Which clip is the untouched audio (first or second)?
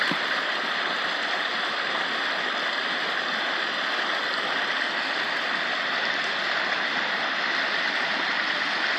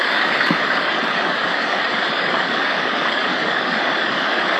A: first